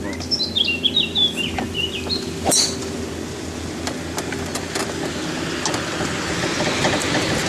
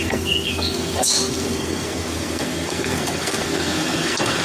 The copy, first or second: second